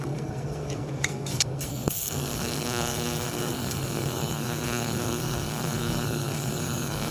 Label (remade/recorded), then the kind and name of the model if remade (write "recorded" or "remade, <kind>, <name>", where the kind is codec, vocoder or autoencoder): remade, codec, SNAC